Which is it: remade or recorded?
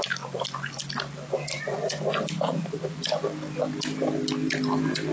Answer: recorded